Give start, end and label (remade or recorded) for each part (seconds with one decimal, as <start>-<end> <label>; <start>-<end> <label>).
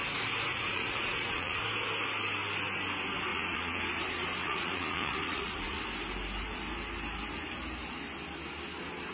0.0-0.5 recorded; 0.5-1.6 remade; 1.6-3.3 recorded; 3.3-3.8 remade; 3.8-4.4 recorded; 4.4-5.8 remade; 5.8-9.1 recorded